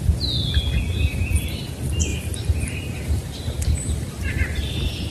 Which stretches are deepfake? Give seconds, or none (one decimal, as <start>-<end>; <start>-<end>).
2.1-5.1